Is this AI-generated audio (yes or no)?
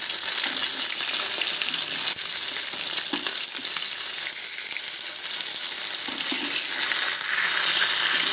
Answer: no